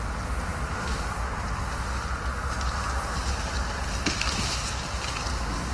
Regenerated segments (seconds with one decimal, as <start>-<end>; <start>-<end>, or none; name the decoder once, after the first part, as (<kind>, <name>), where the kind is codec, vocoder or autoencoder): none